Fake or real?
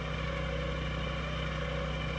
real